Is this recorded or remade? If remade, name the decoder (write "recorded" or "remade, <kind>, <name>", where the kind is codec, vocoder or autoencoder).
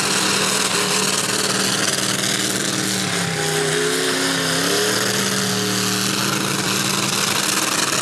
recorded